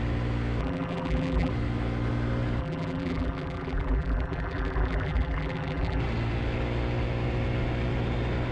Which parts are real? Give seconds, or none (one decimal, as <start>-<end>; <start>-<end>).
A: 0.0-0.6; 1.5-2.6; 6.0-8.5